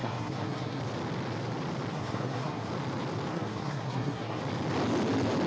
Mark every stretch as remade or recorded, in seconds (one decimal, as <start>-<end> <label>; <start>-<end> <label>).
0.0-0.8 remade; 0.8-1.9 recorded; 1.9-2.7 remade; 2.7-3.3 recorded; 3.3-4.4 remade; 4.4-5.5 recorded